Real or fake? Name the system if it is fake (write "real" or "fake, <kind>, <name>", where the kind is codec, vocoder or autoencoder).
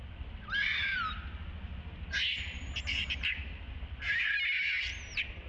real